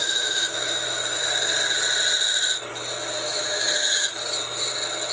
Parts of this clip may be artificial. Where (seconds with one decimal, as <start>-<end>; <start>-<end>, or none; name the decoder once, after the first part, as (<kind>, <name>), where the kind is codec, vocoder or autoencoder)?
0.0-1.2 (autoencoder, DAC-VAE); 2.7-4.2